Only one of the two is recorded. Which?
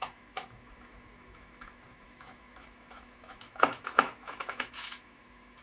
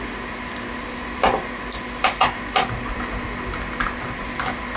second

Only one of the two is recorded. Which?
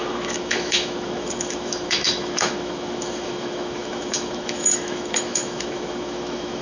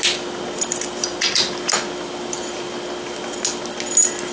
second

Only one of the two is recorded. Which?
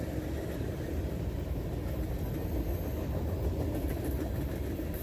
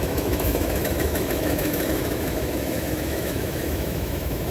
first